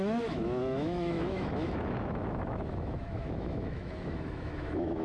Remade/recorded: remade